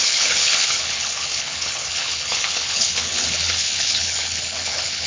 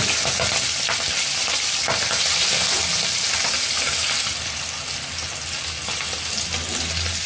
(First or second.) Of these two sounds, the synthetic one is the first